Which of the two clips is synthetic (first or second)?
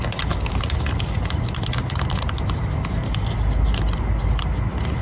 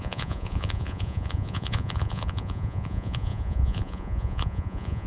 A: second